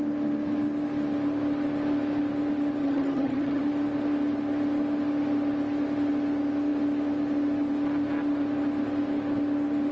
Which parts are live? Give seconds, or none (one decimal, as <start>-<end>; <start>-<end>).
0.0-2.8; 3.6-9.9